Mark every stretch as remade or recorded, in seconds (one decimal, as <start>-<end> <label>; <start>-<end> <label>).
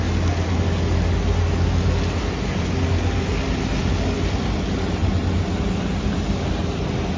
0.0-7.2 recorded